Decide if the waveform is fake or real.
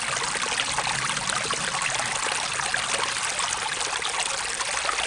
real